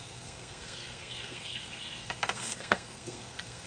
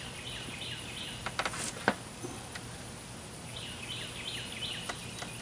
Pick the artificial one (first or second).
first